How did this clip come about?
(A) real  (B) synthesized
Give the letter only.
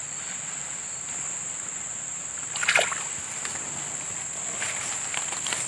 A